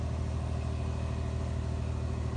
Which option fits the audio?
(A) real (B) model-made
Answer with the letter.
A